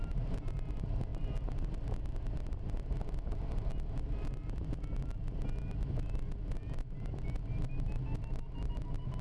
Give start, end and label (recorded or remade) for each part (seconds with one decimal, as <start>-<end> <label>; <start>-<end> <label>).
0.0-1.1 recorded; 1.1-1.7 remade; 1.7-9.2 recorded